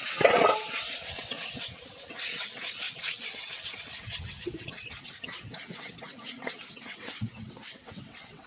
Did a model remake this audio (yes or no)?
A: yes